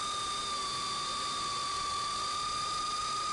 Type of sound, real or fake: real